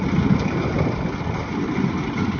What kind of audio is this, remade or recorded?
recorded